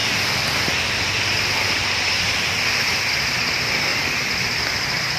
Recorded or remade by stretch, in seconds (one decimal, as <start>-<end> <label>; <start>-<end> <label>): 0.0-3.9 recorded; 3.9-4.6 remade; 4.6-5.2 recorded